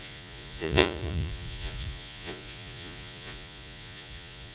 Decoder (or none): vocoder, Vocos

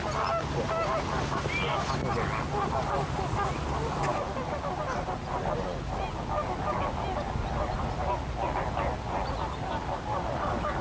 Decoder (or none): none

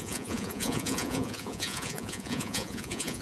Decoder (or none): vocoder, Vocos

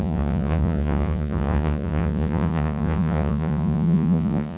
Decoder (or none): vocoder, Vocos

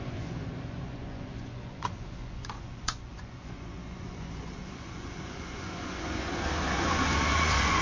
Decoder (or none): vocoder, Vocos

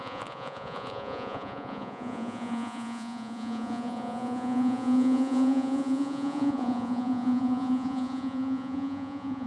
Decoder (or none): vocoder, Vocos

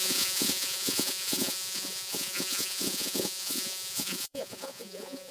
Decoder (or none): vocoder, Vocos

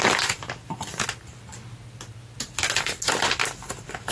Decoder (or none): none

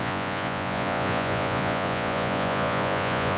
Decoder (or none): vocoder, Vocos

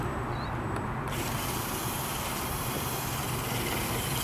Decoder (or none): none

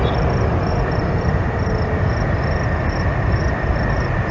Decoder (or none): none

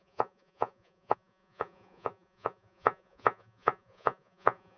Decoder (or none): vocoder, Vocos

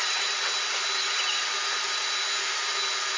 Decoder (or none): none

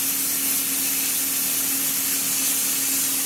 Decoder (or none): none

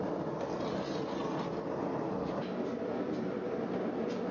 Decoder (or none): none